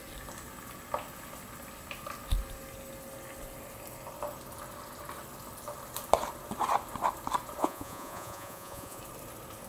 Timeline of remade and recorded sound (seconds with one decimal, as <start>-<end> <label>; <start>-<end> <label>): 0.0-7.6 recorded; 7.6-9.0 remade; 9.0-9.7 recorded